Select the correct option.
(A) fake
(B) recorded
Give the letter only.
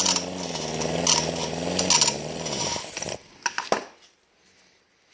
B